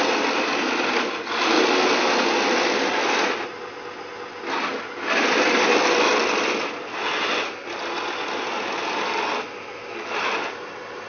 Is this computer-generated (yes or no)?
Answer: no